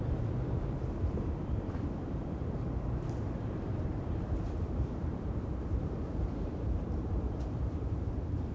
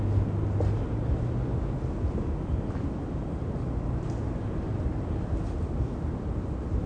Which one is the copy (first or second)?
first